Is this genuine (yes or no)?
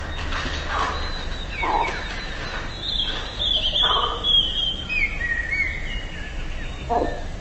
yes